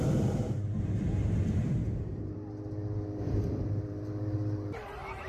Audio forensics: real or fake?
fake